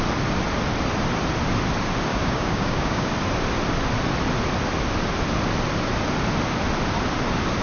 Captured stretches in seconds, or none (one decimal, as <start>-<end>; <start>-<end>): 0.0-2.1; 3.1-7.6